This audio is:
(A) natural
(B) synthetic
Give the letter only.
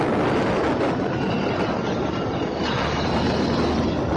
A